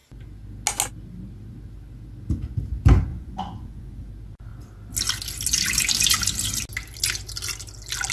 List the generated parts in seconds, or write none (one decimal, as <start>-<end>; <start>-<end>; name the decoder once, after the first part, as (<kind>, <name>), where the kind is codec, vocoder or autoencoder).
3.1-4.1 (vocoder, Vocos)